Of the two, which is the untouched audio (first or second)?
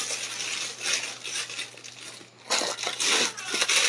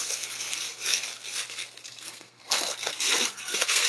first